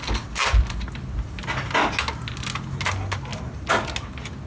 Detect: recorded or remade recorded